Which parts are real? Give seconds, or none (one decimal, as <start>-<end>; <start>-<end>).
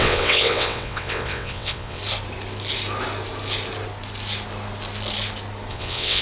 2.0-5.7